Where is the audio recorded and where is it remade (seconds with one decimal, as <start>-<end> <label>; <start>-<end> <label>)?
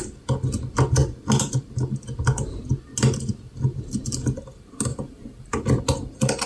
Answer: 0.0-4.9 recorded; 4.9-5.8 remade; 5.8-6.5 recorded